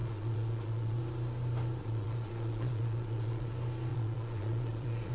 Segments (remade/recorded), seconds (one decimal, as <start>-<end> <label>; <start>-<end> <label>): 0.0-1.0 remade; 1.0-1.8 recorded; 1.8-3.5 remade; 3.5-3.9 recorded; 3.9-5.1 remade